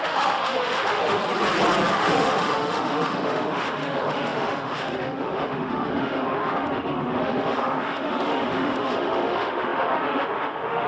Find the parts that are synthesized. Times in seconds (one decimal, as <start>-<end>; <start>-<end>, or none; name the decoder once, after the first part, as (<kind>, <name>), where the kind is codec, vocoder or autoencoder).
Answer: 0.0-1.2 (autoencoder, DAC-VAE); 1.9-10.9

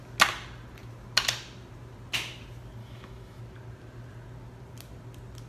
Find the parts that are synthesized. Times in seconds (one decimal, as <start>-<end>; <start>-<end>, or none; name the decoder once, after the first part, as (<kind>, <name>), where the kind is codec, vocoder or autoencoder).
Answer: 2.8-3.4 (autoencoder, DAC-VAE)

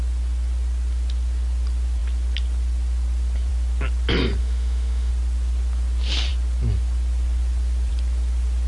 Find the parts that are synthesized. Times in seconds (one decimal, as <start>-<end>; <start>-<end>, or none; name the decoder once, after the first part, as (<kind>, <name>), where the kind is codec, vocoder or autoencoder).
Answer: 4.4-5.1 (autoencoder, DAC-VAE)

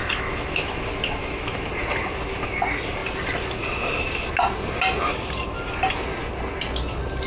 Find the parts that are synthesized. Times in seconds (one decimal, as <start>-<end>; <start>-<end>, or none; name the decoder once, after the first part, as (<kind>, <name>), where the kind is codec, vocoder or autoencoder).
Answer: 0.0-1.7 (autoencoder, DAC-VAE)

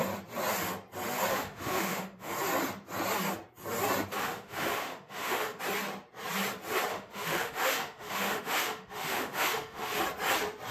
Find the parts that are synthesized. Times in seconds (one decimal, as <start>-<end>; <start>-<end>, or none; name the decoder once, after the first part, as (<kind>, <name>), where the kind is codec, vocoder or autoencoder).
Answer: 1.3-2.3 (autoencoder, DAC-VAE); 4.2-5.6; 6.9-10.0

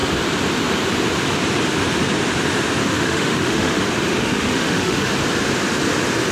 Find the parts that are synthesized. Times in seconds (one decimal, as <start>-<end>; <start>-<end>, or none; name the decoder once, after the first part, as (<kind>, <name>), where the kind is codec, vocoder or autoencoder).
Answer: 2.8-3.8 (autoencoder, DAC-VAE); 4.2-5.1